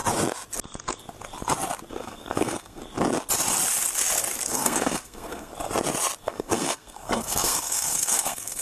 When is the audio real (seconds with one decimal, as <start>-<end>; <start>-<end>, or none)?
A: 0.0-1.9; 2.8-4.5; 5.5-6.2